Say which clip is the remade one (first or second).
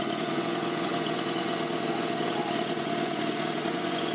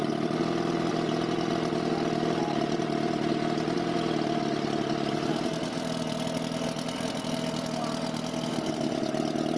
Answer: first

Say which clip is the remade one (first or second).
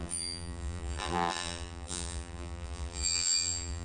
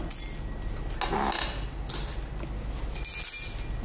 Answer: first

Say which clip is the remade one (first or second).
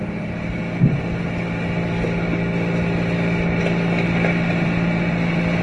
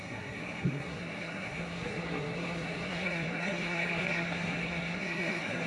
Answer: second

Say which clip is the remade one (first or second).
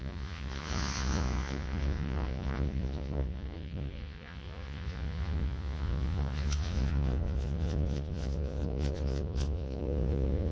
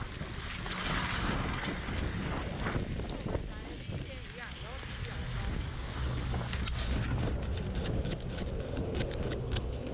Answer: first